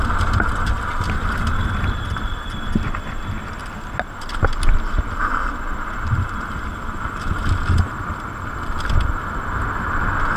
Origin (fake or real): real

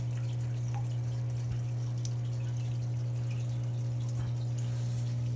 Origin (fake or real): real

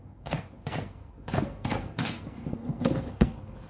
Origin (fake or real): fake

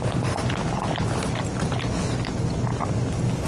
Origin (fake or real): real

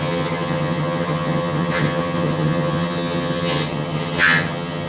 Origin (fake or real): fake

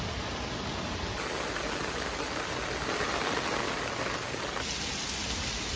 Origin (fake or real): real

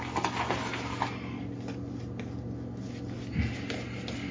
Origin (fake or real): real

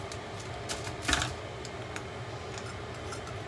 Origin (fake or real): real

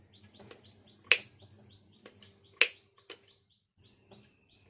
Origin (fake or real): real